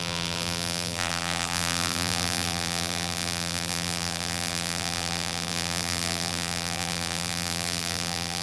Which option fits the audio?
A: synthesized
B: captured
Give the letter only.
A